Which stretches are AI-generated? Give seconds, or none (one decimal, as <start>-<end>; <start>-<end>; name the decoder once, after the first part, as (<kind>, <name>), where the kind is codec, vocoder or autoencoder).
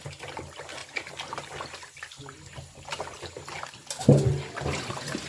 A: none